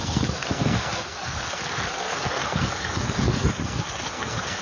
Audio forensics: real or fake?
fake